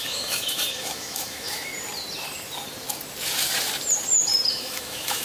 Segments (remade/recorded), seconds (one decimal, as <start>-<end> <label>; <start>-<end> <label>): 0.0-1.7 remade; 1.7-4.5 recorded; 4.5-5.2 remade